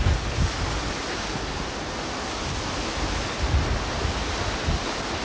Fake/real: real